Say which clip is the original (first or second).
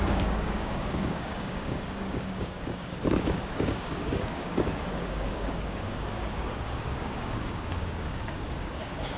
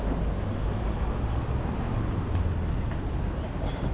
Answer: second